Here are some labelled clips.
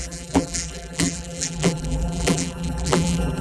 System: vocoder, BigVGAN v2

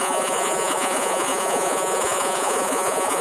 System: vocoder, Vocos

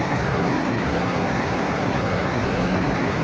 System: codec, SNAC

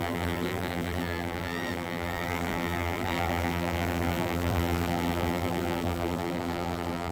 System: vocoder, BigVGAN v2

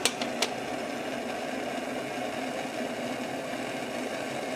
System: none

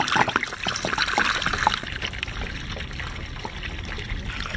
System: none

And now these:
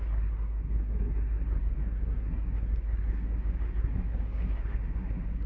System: codec, SNAC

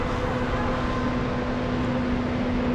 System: none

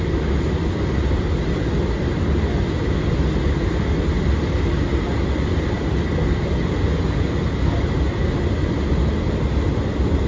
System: none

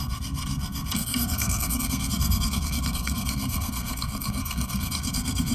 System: codec, SNAC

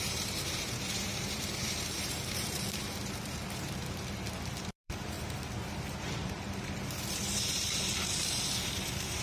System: vocoder, BigVGAN v2